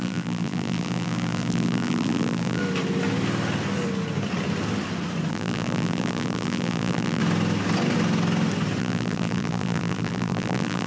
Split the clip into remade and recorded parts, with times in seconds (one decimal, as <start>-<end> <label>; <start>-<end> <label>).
0.0-2.6 remade; 2.6-5.3 recorded; 5.3-7.2 remade; 7.2-8.8 recorded; 8.8-10.9 remade

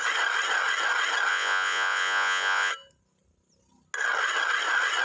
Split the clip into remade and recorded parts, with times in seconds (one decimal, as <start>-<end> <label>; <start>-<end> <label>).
0.0-1.3 recorded; 1.3-2.7 remade; 2.7-5.0 recorded

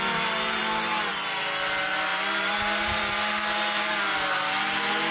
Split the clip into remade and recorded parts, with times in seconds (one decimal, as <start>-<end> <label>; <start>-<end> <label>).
0.0-0.6 recorded; 0.6-1.1 remade; 1.1-2.1 recorded; 2.1-3.0 remade; 3.0-5.1 recorded

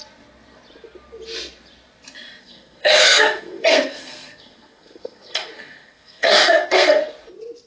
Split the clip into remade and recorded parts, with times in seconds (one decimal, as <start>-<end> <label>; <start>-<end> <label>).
0.0-2.4 recorded; 2.4-7.0 remade; 7.0-7.7 recorded